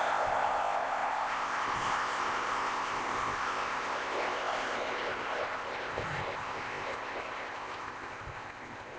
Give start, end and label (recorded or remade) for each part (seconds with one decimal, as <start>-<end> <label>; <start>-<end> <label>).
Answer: 0.0-9.0 remade